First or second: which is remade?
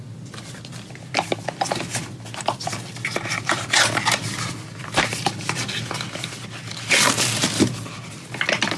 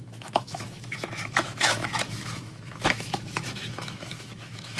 second